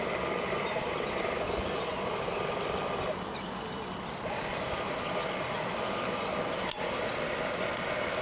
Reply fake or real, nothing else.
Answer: fake